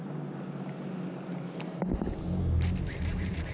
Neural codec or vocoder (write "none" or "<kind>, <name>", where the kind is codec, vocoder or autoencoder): none